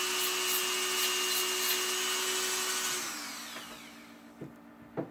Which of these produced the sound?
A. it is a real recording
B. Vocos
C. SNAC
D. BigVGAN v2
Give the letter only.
A